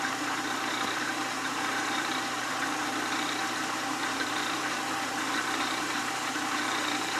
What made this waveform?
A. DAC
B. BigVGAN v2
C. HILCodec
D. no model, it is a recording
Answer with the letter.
B